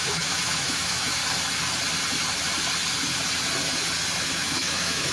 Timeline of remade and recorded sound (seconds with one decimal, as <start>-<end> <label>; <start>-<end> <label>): 0.0-1.2 remade; 1.2-4.3 recorded; 4.3-5.1 remade